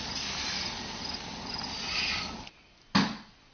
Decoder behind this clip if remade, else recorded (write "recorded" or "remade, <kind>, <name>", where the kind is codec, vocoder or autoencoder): recorded